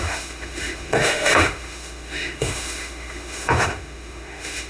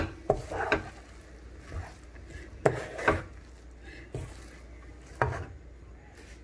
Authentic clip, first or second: second